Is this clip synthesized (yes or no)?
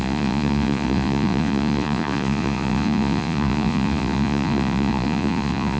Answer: yes